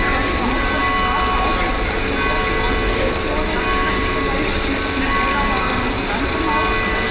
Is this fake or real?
real